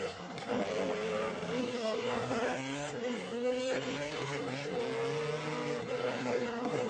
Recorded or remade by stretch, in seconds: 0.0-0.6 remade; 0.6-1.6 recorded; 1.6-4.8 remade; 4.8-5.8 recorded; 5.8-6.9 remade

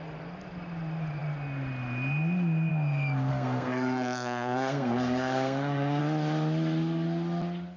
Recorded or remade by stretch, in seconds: 0.0-3.3 recorded; 3.3-6.0 remade; 6.0-7.8 recorded

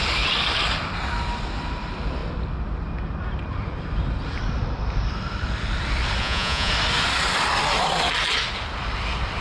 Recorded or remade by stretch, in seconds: 0.0-6.2 recorded; 6.2-6.7 remade; 6.7-9.4 recorded

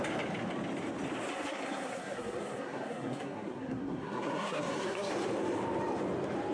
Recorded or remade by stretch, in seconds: 0.0-1.3 recorded; 1.3-5.1 remade; 5.1-6.5 recorded